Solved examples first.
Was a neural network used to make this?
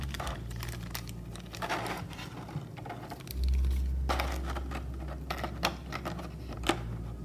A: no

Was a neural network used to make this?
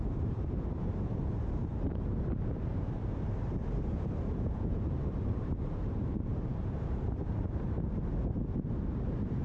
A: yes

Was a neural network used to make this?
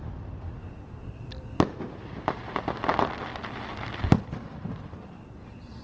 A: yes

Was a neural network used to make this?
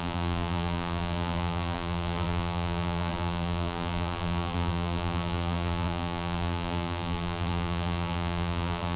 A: yes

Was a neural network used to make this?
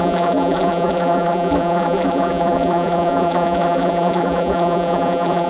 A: yes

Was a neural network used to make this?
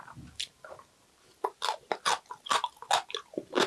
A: no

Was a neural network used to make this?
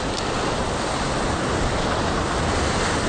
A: no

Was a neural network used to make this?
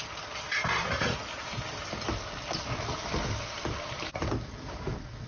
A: no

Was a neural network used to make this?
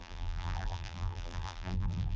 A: yes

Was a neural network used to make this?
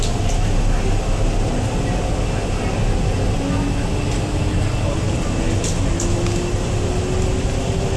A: no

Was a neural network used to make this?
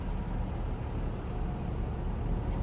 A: no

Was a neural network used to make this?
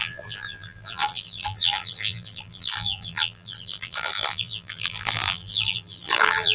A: yes